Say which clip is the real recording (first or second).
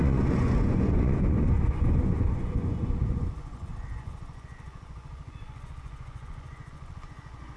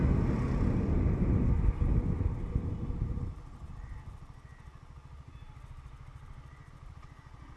second